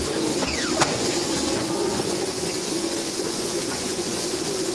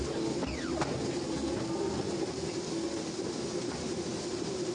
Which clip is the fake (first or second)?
first